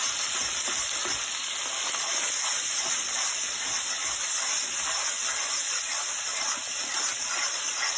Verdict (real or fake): real